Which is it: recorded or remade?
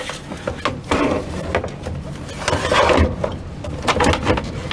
recorded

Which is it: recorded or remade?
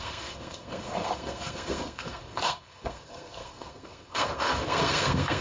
remade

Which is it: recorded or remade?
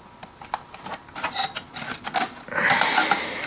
recorded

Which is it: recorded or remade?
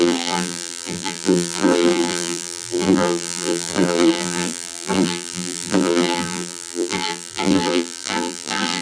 remade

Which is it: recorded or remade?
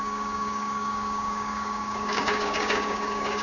remade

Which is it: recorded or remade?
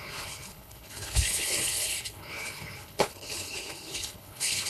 remade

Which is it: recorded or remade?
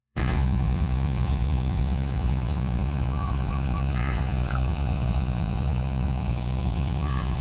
remade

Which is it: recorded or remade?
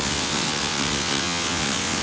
remade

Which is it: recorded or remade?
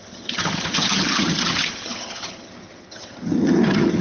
remade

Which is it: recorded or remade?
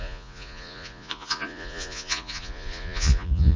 remade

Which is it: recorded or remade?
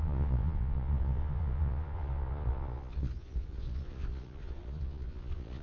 remade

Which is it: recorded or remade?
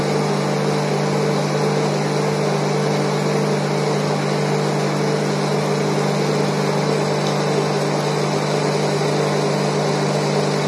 recorded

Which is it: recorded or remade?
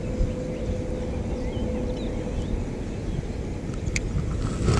recorded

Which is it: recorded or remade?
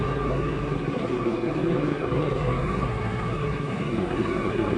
remade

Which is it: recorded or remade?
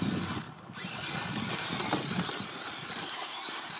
recorded